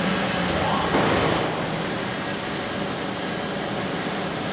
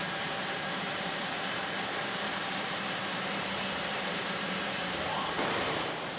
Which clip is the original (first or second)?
first